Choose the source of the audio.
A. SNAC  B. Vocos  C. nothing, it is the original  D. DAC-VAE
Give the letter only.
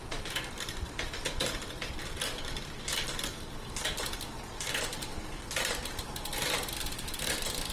C